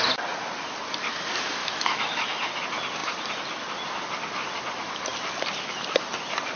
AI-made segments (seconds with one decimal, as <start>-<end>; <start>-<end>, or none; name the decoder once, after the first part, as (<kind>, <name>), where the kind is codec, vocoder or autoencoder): 1.6-2.4 (autoencoder, DAC-VAE)